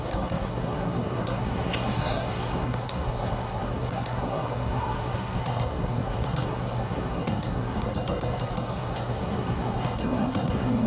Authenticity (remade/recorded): remade